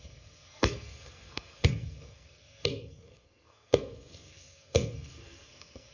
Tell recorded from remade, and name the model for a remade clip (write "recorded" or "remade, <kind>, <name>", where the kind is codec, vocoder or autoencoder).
remade, codec, SNAC